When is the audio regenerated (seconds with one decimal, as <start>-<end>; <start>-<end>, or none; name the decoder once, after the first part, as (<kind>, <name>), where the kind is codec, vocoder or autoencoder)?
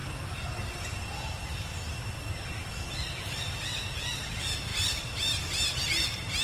4.7-5.4 (vocoder, BigVGAN v2)